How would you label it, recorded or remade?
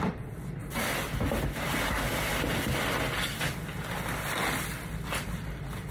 recorded